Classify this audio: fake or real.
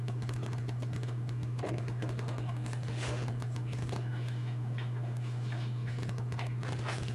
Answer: fake